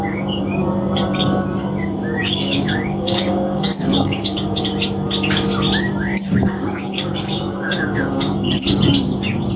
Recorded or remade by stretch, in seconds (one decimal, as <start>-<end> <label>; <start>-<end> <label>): 0.0-2.2 recorded; 2.2-4.6 remade; 4.6-6.1 recorded; 6.1-8.5 remade; 8.5-9.6 recorded